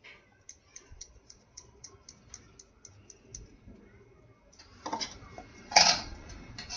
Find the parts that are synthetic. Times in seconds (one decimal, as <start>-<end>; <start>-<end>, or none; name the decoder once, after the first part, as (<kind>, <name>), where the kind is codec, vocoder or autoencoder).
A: 0.7-1.9 (vocoder, Vocos); 5.5-6.3